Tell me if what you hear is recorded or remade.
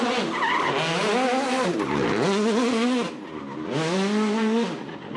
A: recorded